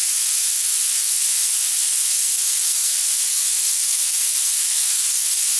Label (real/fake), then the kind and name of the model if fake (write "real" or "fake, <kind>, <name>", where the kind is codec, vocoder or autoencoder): fake, codec, SNAC